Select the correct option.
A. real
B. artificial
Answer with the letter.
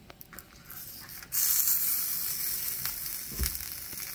A